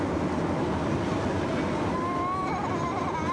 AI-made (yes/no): no